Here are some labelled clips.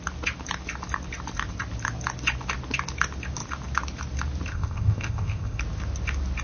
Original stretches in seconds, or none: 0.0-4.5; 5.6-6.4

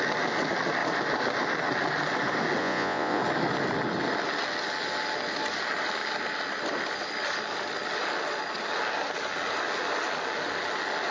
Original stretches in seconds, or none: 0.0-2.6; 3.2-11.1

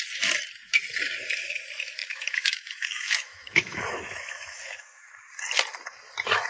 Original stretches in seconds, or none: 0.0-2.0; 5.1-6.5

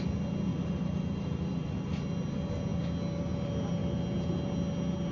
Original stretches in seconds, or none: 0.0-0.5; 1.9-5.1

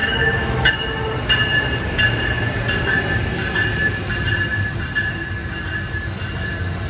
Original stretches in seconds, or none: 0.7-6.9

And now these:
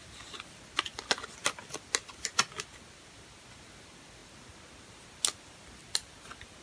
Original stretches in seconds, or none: 0.0-6.6